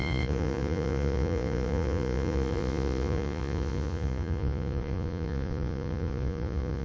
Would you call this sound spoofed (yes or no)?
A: yes